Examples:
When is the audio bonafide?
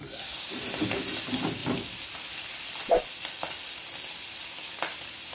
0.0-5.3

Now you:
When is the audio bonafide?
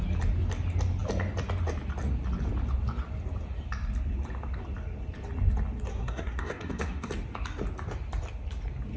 0.0-5.9; 7.1-9.0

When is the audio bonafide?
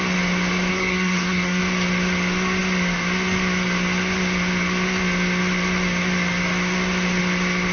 0.0-0.7; 1.6-7.7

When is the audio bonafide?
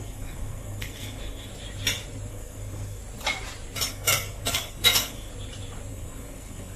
1.5-2.3; 3.0-3.9; 5.3-5.9